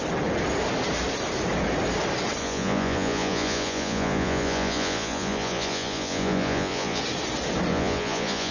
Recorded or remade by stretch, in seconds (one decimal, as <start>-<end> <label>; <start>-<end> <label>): 0.0-2.4 recorded; 2.4-7.0 remade; 7.0-7.7 recorded; 7.7-8.5 remade